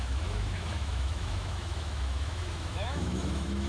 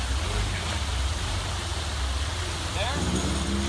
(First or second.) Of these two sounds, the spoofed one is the first